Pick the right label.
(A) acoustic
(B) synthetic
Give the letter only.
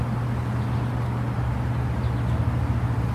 A